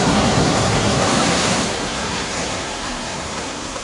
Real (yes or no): no